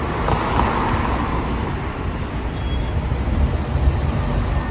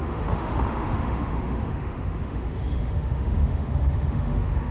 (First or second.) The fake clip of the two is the second